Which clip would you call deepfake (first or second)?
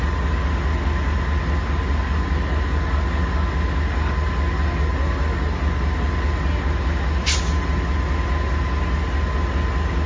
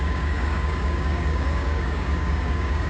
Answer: second